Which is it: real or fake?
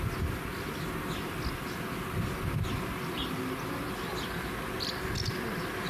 real